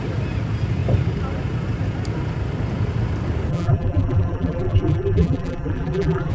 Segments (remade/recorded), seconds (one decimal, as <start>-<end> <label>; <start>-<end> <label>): 0.0-3.5 recorded; 3.5-6.3 remade